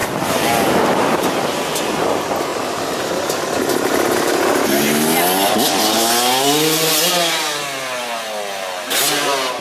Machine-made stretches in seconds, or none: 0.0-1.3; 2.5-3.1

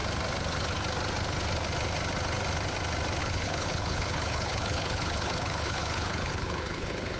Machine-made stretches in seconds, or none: 3.2-7.2

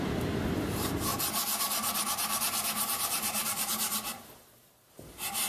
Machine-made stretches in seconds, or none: 0.0-1.1; 1.6-5.5